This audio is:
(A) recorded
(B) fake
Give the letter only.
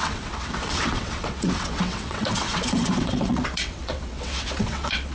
B